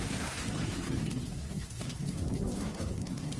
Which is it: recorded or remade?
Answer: remade